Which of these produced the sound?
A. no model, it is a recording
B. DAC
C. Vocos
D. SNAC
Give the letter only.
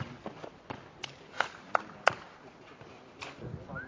A